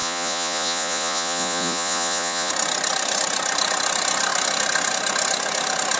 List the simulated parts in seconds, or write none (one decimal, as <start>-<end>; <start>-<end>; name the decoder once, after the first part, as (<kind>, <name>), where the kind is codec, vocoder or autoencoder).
0.0-2.5 (vocoder, Vocos)